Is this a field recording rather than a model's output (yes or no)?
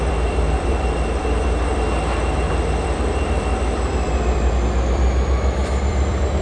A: no